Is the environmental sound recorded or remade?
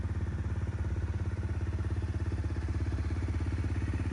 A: recorded